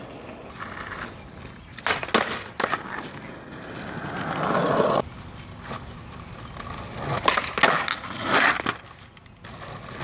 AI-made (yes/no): no